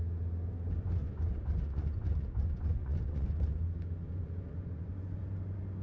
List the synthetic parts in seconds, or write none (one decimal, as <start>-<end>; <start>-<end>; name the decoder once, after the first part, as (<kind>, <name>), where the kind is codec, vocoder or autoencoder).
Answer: 1.0-3.4 (vocoder, Vocos); 4.0-5.2